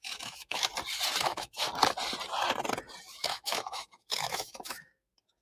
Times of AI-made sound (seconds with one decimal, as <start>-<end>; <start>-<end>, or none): 0.0-0.7; 1.2-1.7; 3.2-5.4